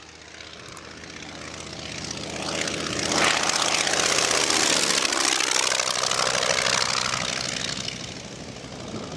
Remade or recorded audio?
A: recorded